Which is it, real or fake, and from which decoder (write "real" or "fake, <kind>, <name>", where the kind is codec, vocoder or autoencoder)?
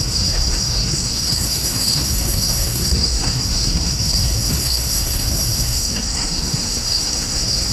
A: fake, codec, SNAC